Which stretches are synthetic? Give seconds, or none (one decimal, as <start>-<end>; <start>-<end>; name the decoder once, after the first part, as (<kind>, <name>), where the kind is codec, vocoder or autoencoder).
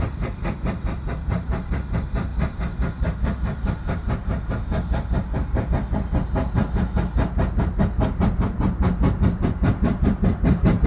none